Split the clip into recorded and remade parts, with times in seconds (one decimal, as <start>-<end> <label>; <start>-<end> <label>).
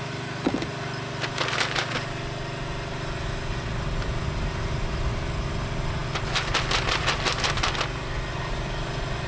0.0-9.3 recorded